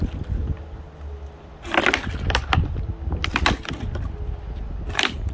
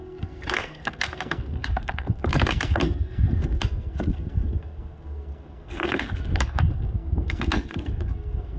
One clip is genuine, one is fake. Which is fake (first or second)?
second